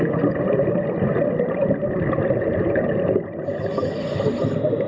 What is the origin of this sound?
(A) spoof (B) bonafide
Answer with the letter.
B